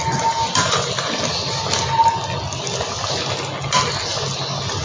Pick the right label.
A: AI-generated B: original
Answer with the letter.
B